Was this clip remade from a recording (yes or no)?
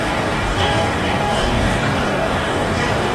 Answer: yes